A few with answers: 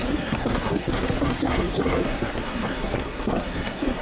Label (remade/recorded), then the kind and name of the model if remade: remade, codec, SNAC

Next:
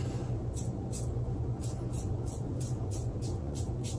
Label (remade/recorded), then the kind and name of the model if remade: remade, vocoder, Vocos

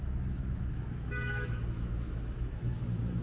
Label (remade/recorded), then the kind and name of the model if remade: remade, autoencoder, DAC-VAE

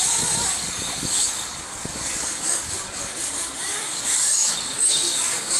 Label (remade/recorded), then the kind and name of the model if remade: remade, codec, DAC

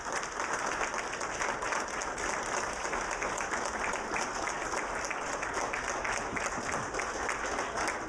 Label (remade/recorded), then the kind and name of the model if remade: recorded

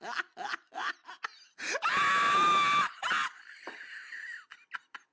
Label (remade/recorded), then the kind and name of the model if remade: recorded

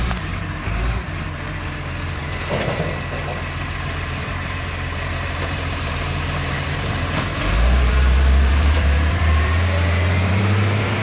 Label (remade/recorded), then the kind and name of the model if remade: remade, vocoder, BigVGAN v2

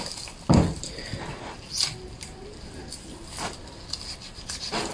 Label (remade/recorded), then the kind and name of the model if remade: recorded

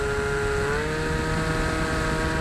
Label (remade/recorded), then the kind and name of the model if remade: recorded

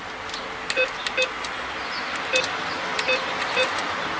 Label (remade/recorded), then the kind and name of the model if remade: recorded